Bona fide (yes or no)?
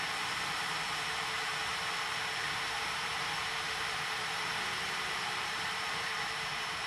no